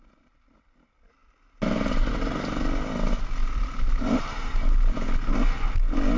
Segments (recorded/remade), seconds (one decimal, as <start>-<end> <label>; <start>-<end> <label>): 0.0-3.4 recorded; 3.4-5.0 remade; 5.0-6.2 recorded